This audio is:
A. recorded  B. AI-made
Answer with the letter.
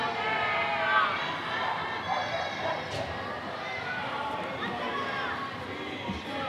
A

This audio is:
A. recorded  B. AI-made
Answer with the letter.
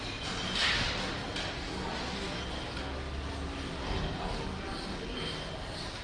A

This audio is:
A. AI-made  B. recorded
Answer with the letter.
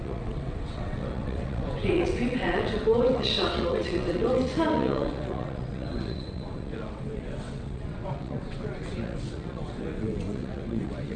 A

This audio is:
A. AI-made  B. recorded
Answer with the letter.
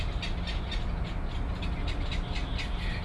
B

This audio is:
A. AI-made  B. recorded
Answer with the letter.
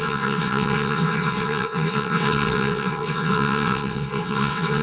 A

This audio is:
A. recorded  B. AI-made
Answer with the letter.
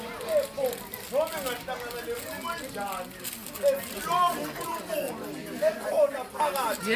A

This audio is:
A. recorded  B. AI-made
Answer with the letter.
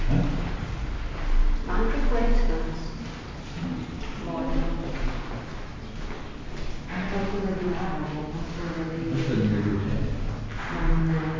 A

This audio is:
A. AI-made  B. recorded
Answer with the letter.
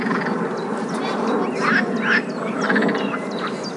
B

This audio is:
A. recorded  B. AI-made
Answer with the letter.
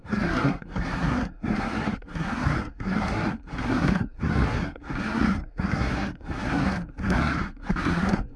B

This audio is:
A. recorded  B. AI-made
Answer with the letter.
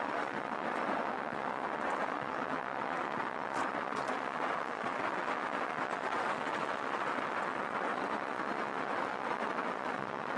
B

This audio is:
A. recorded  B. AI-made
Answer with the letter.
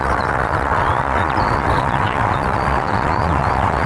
B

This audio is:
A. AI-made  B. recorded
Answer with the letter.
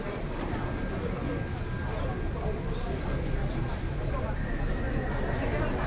B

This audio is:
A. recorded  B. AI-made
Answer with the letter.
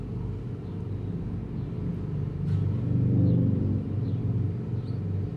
A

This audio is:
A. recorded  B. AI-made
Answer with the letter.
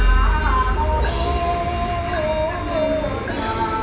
A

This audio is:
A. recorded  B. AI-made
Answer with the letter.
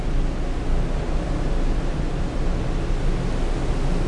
A